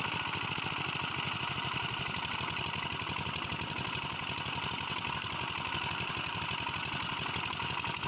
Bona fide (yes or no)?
yes